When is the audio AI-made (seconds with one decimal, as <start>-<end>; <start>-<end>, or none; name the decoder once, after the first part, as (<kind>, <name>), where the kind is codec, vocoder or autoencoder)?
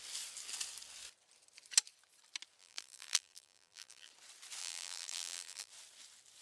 2.6-4.1 (vocoder, BigVGAN v2); 4.6-5.7